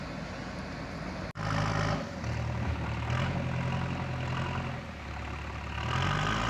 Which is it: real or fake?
real